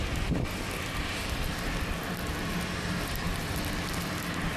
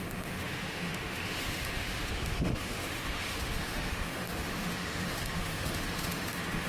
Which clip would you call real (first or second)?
first